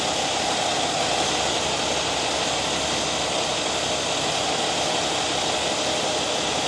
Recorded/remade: recorded